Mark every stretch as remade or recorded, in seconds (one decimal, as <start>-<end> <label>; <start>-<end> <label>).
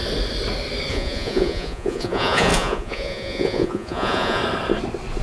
0.0-0.9 recorded; 0.9-4.4 remade; 4.4-5.2 recorded